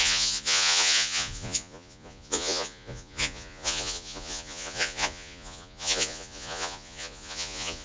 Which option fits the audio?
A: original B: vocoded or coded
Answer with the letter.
B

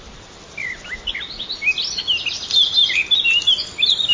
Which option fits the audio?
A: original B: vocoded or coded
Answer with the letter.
A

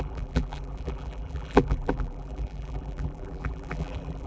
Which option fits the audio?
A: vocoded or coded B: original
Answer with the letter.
A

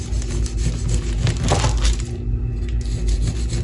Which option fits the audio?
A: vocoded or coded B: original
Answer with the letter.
B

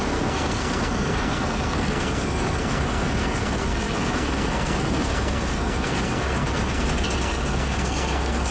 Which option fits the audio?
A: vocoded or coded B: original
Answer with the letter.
A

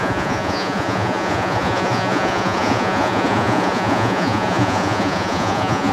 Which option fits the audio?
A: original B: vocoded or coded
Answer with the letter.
B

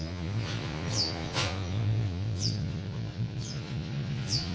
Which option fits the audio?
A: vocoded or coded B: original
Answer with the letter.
A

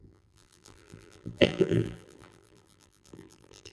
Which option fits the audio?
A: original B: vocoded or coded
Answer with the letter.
B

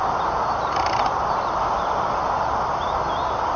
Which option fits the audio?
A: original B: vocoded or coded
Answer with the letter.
A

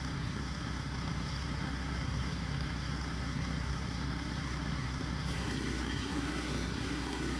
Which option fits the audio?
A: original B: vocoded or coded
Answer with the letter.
B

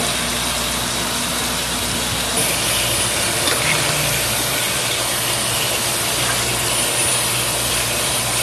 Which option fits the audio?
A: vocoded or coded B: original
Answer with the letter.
B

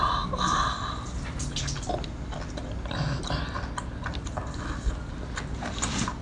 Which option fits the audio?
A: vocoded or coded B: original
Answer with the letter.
B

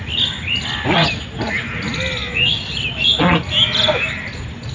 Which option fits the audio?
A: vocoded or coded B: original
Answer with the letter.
B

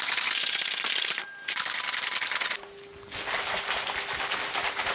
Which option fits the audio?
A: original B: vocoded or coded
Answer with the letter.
A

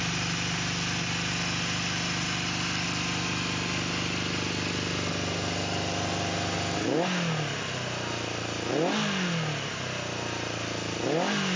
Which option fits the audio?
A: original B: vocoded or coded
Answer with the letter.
A